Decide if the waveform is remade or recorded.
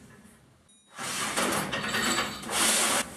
recorded